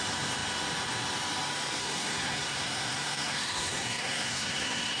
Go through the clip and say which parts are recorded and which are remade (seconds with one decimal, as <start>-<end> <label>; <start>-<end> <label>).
0.0-1.8 recorded; 1.8-5.0 remade